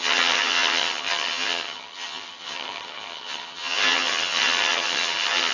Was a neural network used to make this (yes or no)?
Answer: yes